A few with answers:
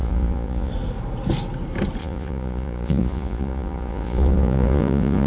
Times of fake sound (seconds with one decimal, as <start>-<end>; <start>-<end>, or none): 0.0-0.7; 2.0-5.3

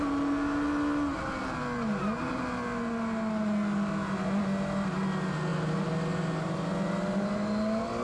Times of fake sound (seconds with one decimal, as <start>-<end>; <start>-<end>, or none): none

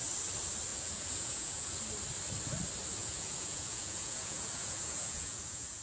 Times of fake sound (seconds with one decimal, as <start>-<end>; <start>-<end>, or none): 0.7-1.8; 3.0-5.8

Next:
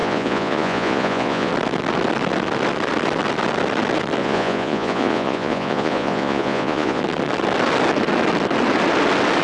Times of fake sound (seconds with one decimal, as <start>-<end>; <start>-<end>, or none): 0.0-1.5; 4.2-7.0

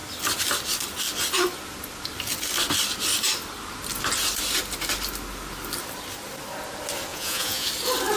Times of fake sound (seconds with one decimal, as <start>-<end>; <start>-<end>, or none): 7.1-7.7

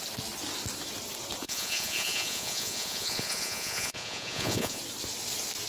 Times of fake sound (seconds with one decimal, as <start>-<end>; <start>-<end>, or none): 1.4-4.8

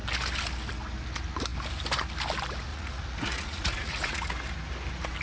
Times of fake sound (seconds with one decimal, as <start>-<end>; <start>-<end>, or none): 2.7-4.3

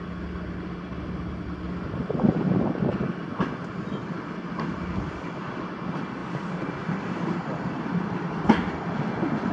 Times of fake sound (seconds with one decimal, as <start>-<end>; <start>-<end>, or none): none